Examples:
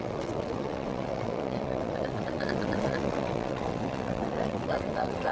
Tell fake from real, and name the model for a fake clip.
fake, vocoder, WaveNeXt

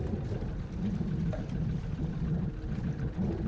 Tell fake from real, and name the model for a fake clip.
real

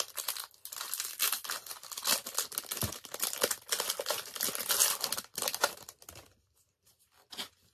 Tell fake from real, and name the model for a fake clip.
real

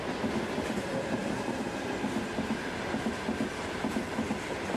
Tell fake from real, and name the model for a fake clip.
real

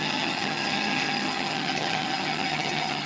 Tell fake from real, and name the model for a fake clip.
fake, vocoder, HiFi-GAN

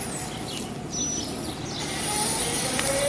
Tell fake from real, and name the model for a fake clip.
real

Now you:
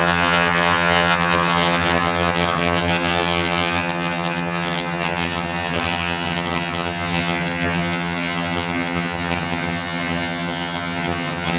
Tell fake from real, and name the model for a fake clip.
fake, vocoder, HiFi-GAN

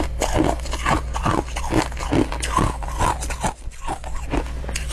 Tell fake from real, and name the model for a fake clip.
real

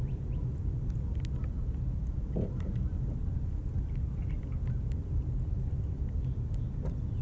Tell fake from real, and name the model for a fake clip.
real